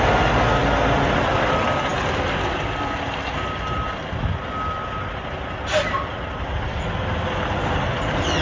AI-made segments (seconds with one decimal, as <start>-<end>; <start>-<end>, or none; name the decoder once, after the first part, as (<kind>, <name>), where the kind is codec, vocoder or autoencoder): none